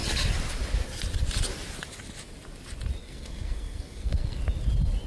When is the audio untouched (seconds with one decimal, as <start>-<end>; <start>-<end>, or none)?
0.0-3.0; 4.4-5.1